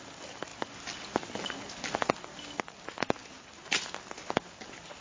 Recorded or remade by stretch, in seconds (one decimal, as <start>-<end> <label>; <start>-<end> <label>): 0.0-5.0 recorded